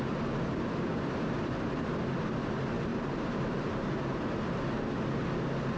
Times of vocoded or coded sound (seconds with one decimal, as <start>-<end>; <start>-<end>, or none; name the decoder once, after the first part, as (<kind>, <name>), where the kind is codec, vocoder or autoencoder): 2.9-4.6 (vocoder, BigVGAN v2)